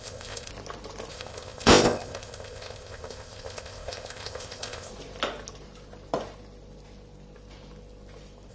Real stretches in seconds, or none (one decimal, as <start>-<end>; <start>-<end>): 0.5-1.1; 4.9-8.5